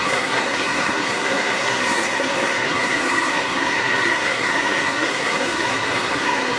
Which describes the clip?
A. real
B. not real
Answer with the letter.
B